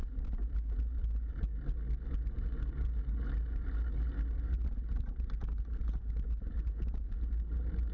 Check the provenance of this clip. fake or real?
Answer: real